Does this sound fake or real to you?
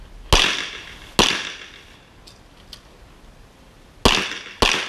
real